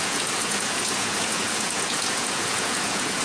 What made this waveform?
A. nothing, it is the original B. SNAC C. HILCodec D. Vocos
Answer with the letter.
D